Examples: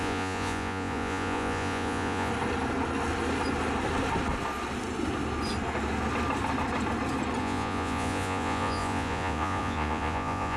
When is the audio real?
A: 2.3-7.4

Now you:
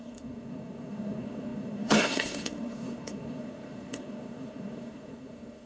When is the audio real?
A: none

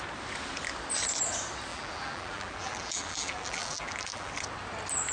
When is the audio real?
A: 0.0-1.7; 4.3-5.1